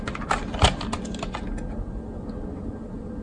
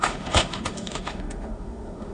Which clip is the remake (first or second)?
second